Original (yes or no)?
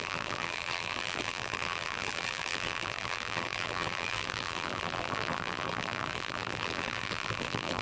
no